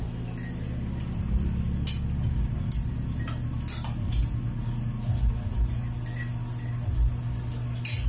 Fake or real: real